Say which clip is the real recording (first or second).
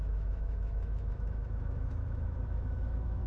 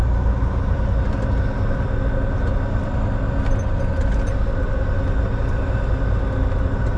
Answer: second